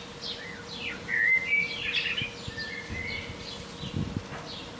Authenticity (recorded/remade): recorded